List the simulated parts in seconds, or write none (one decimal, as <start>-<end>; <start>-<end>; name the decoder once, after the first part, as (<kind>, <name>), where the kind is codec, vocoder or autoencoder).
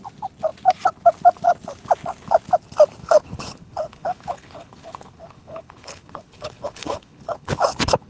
3.0-8.1 (codec, HILCodec)